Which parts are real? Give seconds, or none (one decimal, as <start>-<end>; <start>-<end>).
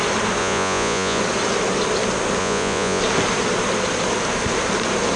0.0-0.4; 1.2-2.4; 3.0-5.2